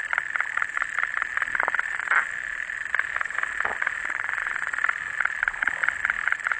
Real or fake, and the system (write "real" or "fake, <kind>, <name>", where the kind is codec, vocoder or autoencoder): real